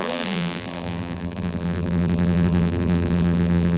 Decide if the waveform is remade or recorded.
remade